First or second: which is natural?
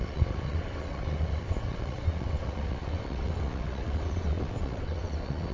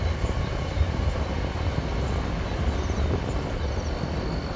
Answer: second